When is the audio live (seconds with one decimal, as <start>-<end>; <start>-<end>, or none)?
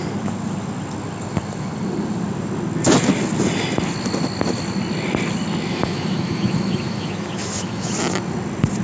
0.0-5.7; 7.9-8.8